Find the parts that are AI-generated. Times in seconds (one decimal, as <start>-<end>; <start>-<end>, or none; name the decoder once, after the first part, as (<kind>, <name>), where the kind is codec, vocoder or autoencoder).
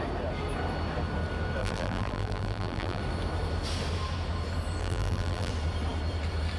1.6-3.0 (vocoder, BigVGAN v2); 4.8-5.5